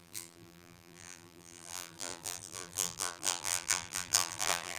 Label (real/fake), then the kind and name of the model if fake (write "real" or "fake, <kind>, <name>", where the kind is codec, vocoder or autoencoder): fake, vocoder, BigVGAN v2